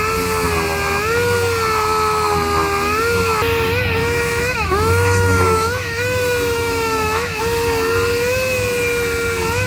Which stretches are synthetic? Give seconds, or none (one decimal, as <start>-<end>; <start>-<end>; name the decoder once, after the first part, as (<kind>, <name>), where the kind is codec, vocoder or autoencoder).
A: 4.0-7.4 (autoencoder, DAC-VAE)

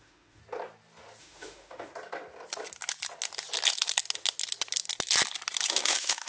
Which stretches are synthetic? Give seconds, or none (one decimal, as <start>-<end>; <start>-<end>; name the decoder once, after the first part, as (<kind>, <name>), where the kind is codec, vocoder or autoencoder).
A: 0.0-0.4 (autoencoder, DAC-VAE); 1.2-1.9; 5.7-6.3

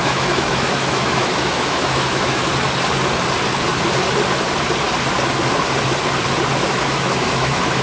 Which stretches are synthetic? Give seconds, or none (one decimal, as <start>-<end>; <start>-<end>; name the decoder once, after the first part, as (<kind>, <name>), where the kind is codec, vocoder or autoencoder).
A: 0.0-2.5 (autoencoder, DAC-VAE); 6.7-7.8

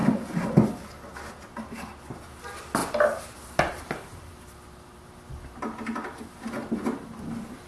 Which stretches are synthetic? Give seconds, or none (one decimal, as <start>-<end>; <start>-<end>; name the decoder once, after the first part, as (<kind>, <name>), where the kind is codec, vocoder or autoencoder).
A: none

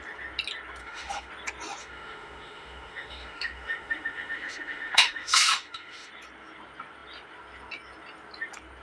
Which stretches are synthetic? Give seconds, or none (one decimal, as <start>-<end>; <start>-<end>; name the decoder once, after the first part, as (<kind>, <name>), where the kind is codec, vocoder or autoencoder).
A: 0.8-1.3 (autoencoder, DAC-VAE); 1.8-6.1

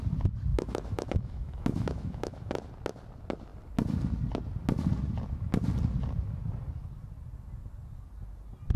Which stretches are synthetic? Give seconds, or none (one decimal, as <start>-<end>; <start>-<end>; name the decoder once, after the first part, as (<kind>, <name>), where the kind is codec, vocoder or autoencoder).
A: 0.5-2.6 (autoencoder, DAC-VAE)

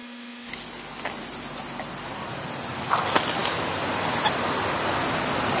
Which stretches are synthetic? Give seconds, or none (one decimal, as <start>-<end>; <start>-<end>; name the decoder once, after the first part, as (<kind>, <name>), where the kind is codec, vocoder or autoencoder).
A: 0.0-0.5 (autoencoder, DAC-VAE)